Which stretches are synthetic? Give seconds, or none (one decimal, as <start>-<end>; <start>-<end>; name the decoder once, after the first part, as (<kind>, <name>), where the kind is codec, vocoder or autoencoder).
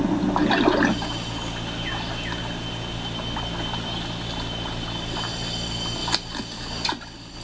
none